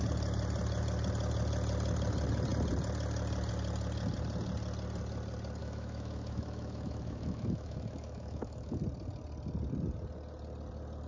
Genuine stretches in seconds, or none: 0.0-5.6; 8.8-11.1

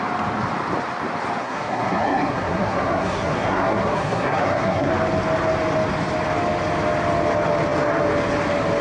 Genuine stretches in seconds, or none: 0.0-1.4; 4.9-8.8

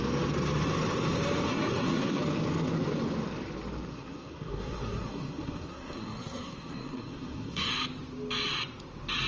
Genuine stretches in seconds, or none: 0.0-1.5; 2.2-3.9; 7.7-9.3